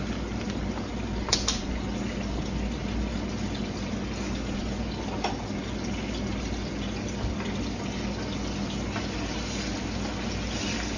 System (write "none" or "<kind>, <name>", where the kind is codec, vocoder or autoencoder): none